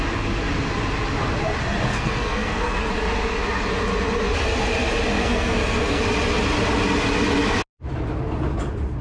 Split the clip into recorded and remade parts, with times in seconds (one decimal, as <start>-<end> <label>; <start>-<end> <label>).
0.0-1.9 recorded; 1.9-2.9 remade; 2.9-5.2 recorded; 5.2-6.0 remade; 6.0-9.0 recorded